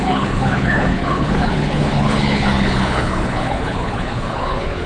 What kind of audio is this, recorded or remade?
remade